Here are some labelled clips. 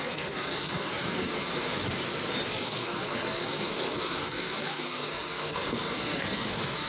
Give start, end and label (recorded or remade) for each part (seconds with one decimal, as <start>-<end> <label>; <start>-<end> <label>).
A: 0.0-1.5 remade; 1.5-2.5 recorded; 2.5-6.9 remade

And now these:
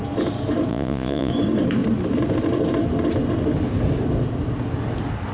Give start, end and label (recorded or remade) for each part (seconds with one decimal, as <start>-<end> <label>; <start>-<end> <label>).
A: 0.0-0.7 recorded; 0.7-1.3 remade; 1.3-5.3 recorded

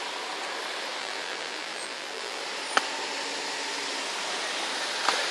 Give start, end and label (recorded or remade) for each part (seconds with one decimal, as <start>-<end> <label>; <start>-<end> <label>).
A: 0.0-1.0 recorded; 1.0-2.4 remade; 2.4-5.3 recorded